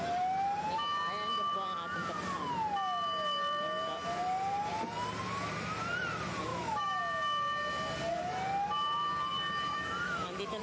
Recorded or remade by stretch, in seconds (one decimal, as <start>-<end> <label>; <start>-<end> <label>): 0.0-6.5 recorded; 6.5-7.0 remade; 7.0-9.7 recorded; 9.7-10.6 remade